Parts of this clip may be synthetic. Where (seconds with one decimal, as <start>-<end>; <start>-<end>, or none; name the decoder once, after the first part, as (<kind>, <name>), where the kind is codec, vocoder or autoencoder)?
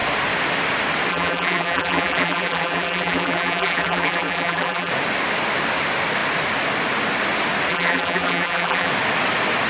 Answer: 1.1-4.9 (vocoder, BigVGAN v2); 7.7-8.9